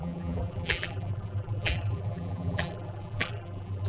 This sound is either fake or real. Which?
fake